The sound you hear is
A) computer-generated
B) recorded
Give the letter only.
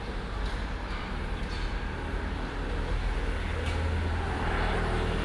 B